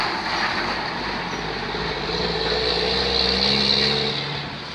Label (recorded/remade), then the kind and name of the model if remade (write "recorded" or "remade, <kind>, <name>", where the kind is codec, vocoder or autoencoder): recorded